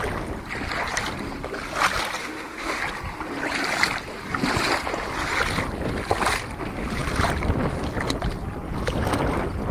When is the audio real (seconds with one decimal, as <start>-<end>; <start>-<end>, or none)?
0.0-2.2; 2.8-9.7